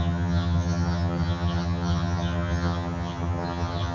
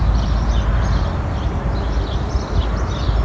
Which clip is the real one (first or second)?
second